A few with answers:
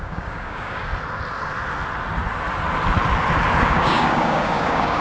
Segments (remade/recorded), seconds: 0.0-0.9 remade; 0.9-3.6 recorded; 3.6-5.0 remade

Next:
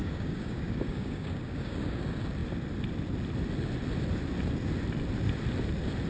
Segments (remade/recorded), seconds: 0.0-2.0 remade; 2.0-6.1 recorded

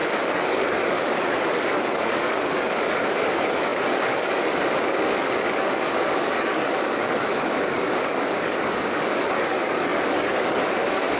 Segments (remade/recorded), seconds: 0.0-11.2 remade

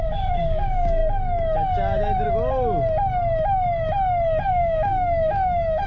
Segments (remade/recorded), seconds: 0.0-1.0 remade; 1.0-4.5 recorded; 4.5-5.9 remade

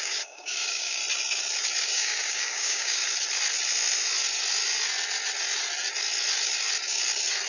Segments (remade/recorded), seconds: 0.0-1.0 remade; 1.0-1.8 recorded; 1.8-3.0 remade; 3.0-7.5 recorded

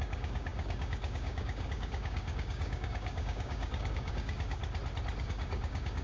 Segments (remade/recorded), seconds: 0.0-4.6 remade; 4.6-5.2 recorded; 5.2-6.0 remade

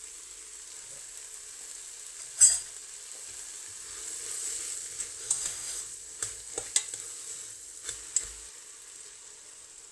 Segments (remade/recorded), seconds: 0.0-5.2 recorded; 5.2-5.8 remade; 5.8-9.9 recorded

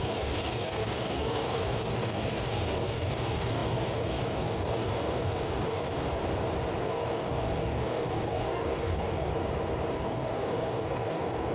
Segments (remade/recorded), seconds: 0.0-6.2 remade; 6.2-6.8 recorded; 6.8-9.3 remade; 9.3-9.9 recorded; 9.9-11.5 remade